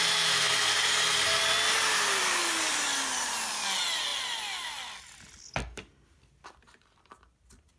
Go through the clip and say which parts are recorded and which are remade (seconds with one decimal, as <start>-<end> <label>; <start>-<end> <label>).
0.0-7.8 recorded